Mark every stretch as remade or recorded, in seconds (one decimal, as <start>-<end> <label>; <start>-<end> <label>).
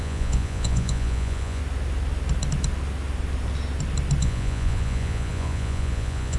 0.0-1.6 remade; 1.6-4.2 recorded; 4.2-6.4 remade